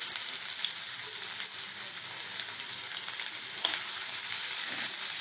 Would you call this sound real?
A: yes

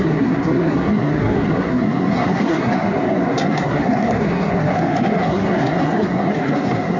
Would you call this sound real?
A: no